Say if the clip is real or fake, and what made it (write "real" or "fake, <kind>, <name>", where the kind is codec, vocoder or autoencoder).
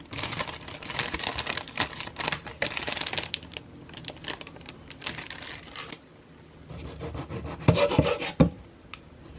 real